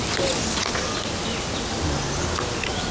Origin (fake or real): real